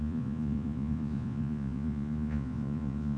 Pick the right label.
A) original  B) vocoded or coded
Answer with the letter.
B